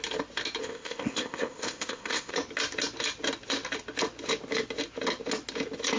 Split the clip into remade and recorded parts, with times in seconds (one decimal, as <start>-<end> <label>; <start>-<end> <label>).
0.0-0.6 recorded; 0.6-2.3 remade; 2.3-6.0 recorded